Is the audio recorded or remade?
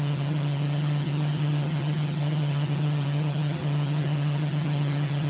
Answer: remade